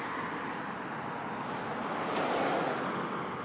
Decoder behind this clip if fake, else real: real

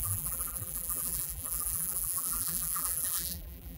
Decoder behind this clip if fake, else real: fake, vocoder, BigVGAN v2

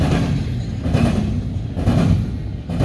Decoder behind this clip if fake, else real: real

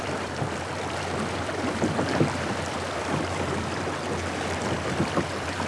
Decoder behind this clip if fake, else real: fake, vocoder, BigVGAN v2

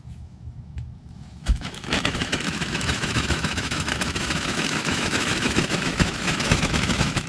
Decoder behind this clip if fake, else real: fake, autoencoder, DAC-VAE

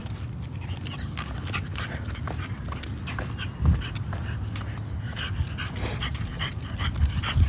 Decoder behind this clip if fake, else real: real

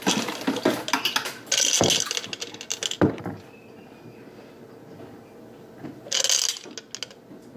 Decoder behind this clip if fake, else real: real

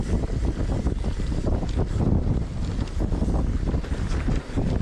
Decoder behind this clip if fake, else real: real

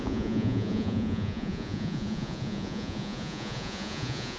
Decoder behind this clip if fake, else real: fake, vocoder, Vocos